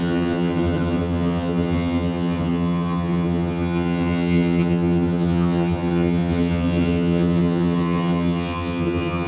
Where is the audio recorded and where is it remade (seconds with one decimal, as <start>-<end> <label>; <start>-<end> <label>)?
0.0-9.3 remade